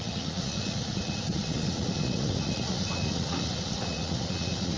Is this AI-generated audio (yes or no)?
yes